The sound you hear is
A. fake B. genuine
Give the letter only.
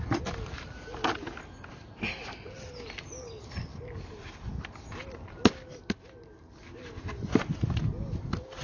B